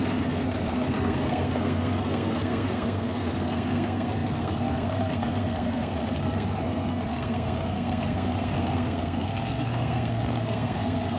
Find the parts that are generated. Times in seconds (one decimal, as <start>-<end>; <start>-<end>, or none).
0.0-11.2